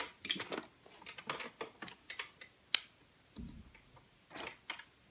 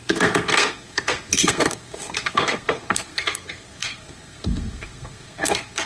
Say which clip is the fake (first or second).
second